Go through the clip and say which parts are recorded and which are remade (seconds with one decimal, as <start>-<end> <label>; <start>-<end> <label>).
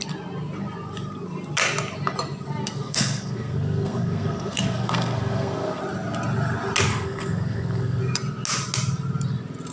0.0-2.6 recorded; 2.6-5.8 remade; 5.8-6.9 recorded; 6.9-8.0 remade; 8.0-9.7 recorded